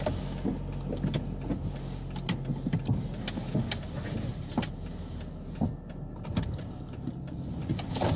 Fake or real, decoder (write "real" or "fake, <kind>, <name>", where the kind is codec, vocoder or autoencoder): real